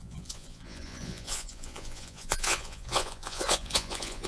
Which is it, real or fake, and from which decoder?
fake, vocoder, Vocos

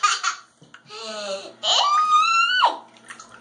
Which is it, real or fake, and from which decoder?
real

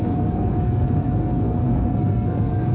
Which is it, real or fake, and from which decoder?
fake, codec, SNAC